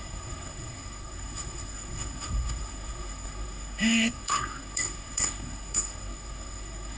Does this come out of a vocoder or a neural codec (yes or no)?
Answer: yes